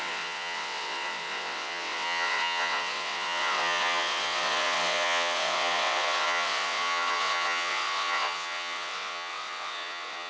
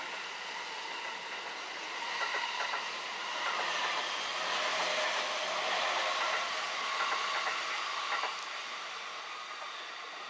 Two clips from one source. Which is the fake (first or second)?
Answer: first